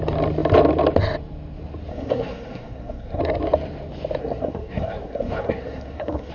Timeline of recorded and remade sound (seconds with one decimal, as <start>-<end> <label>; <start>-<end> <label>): 0.0-1.9 recorded; 1.9-3.2 remade; 3.2-4.2 recorded; 4.2-6.3 remade